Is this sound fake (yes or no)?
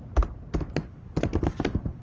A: no